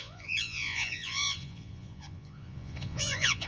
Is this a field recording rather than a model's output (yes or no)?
no